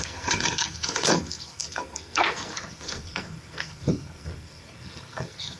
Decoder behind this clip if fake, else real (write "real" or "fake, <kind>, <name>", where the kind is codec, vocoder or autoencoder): fake, codec, SNAC